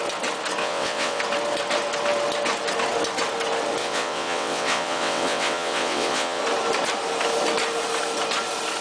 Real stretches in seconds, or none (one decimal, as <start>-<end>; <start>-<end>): 0.0-0.6; 1.2-3.8; 6.4-8.8